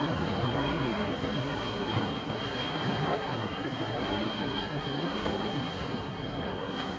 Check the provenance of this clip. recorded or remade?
remade